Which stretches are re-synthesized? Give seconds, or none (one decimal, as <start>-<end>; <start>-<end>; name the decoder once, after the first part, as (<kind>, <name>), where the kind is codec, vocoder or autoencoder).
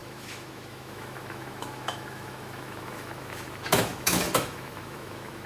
0.0-5.5 (autoencoder, DAC-VAE)